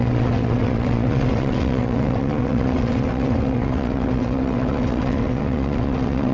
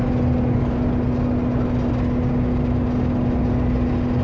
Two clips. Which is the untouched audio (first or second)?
second